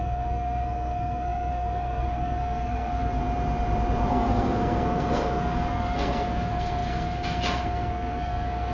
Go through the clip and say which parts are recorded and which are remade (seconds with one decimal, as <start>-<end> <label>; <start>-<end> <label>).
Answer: 0.0-3.2 remade; 3.2-4.1 recorded; 4.1-8.7 remade